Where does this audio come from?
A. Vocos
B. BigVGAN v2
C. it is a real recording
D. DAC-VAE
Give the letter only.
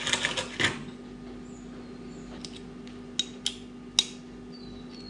C